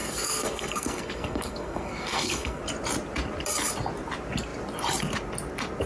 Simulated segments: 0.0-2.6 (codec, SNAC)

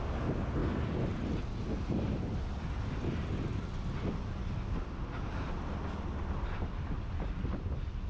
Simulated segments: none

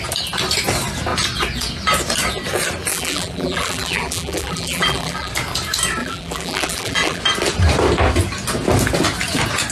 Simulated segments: 2.9-5.3 (vocoder, BigVGAN v2); 6.0-7.2

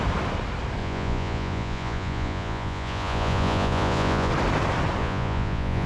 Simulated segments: 0.8-4.3 (vocoder, Vocos); 5.0-5.9

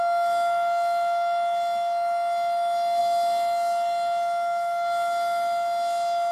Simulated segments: none